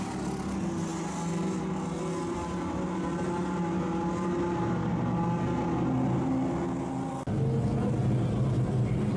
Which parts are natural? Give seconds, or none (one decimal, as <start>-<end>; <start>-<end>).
0.0-9.2